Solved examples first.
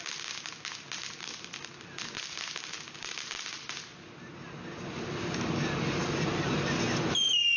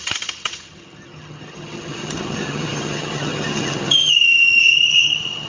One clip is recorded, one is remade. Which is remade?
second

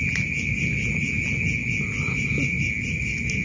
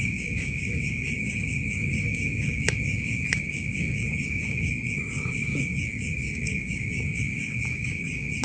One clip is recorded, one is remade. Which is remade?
second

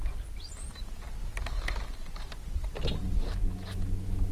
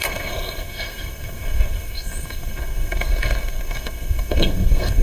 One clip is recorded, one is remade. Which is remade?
second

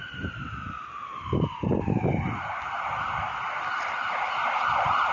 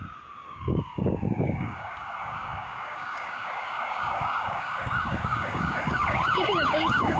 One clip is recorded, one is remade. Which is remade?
second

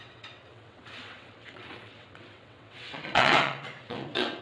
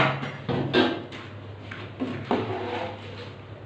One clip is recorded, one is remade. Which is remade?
first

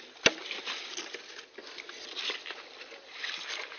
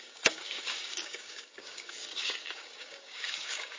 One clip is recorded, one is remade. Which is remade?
second